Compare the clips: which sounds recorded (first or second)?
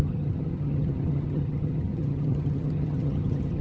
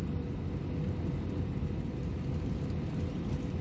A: second